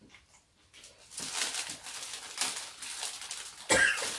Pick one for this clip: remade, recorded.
recorded